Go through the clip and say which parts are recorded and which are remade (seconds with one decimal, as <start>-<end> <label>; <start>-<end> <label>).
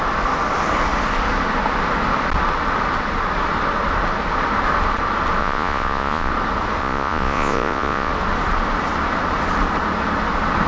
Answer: 0.0-5.4 recorded; 5.4-6.3 remade; 6.3-6.8 recorded; 6.8-8.1 remade; 8.1-10.7 recorded